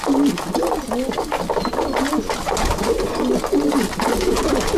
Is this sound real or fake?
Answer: real